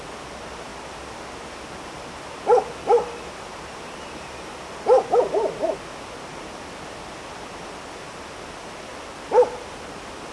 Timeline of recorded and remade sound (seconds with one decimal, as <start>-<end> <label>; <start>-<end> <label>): 0.0-10.3 recorded